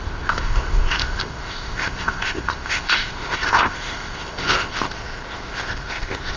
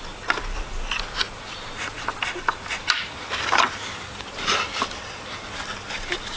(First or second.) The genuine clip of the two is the second